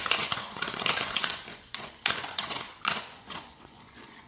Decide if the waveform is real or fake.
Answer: fake